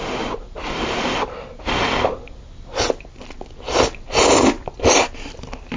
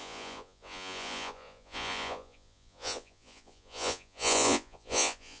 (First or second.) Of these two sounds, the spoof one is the second